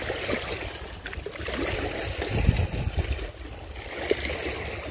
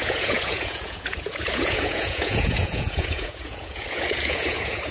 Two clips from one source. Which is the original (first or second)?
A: first